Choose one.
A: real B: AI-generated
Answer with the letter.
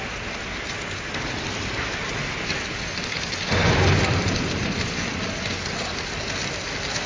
A